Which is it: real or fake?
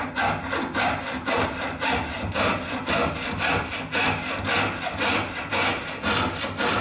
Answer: real